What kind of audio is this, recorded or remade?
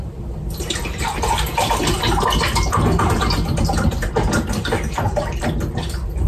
recorded